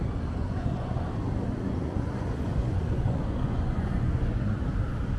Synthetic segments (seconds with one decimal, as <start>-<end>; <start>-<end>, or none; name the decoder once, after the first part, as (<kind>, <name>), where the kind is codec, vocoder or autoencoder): 0.4-1.1 (vocoder, Vocos); 1.5-4.6